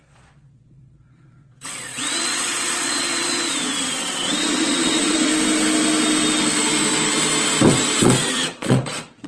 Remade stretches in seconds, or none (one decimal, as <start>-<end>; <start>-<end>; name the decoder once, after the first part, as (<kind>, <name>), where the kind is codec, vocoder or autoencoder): 0.0-5.3 (vocoder, Vocos); 8.0-9.3